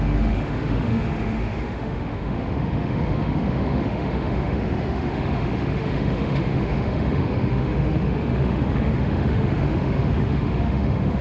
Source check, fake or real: fake